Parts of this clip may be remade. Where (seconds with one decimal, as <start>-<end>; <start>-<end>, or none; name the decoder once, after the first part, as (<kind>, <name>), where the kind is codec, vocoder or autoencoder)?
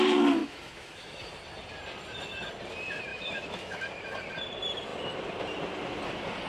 0.4-1.2 (autoencoder, DAC-VAE); 3.1-3.9